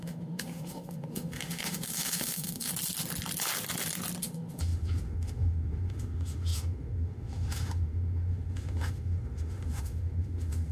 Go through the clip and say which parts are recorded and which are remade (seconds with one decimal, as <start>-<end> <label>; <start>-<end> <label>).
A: 0.0-2.7 remade; 2.7-4.2 recorded; 4.2-10.7 remade